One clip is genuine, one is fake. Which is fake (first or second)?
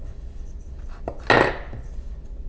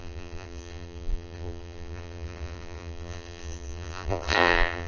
second